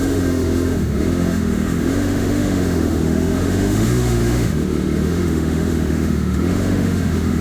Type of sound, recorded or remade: remade